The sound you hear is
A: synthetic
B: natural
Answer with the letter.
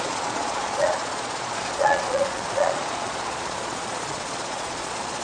A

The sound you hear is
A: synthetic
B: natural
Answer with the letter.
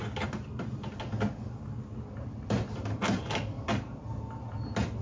B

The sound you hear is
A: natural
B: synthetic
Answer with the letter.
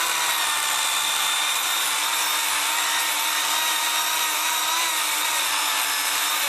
A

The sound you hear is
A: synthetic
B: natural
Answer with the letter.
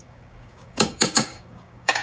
A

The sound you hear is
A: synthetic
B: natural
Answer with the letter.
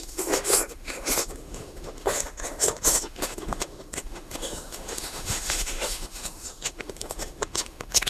A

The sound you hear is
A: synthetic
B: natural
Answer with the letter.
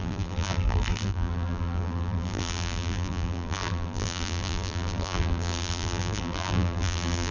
A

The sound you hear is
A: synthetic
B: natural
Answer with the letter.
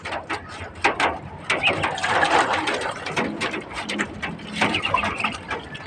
A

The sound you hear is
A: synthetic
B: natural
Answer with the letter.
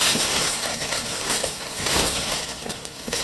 A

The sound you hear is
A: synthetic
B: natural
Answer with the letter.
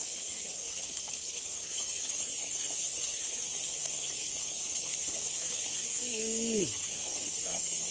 A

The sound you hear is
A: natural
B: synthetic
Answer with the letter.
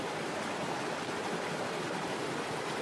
A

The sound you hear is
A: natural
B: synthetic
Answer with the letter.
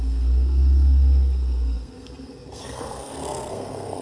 B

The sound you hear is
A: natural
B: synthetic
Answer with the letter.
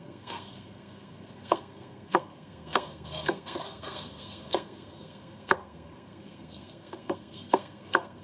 B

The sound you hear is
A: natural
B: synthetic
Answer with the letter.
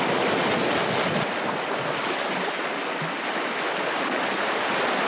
A